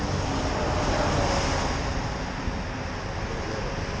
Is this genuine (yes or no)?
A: yes